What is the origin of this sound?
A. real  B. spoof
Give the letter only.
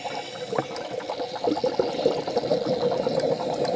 A